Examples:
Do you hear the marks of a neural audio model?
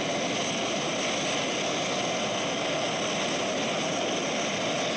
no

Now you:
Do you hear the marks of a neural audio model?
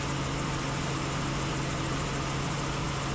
no